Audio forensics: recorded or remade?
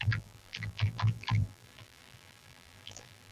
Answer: remade